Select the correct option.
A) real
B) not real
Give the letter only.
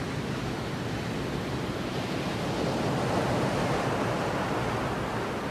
A